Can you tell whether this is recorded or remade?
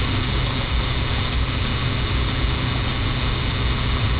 recorded